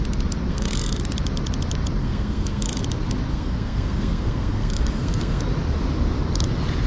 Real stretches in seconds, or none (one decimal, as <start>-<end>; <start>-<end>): 0.0-0.5; 1.0-2.0; 2.8-3.3; 5.4-6.9